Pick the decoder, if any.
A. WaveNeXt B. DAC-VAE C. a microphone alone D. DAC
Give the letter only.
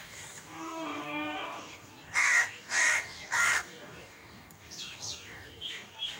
D